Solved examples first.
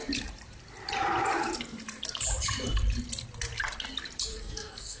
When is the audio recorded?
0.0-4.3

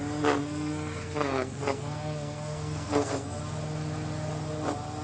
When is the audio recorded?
0.0-0.4; 3.4-5.0

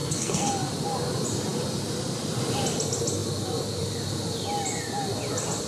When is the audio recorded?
0.5-5.7

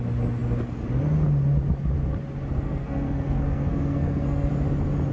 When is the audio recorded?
0.0-2.5; 4.5-5.1